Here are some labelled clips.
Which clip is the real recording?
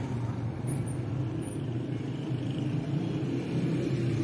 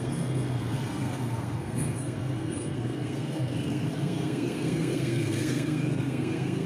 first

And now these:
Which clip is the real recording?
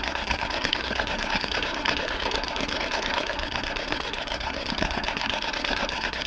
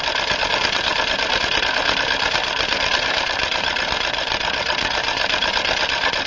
second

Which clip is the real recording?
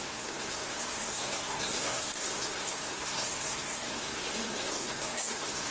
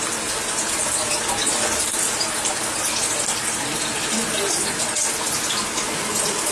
second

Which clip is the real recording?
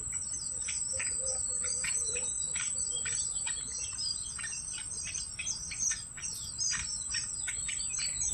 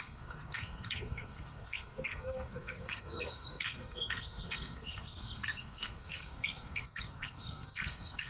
first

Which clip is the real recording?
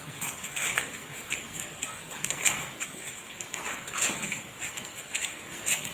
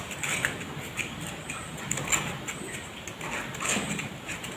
second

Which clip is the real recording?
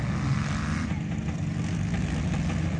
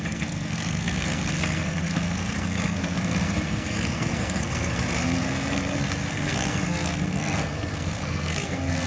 first